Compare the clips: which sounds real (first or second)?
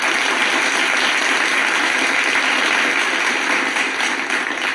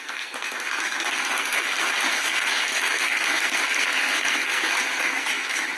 first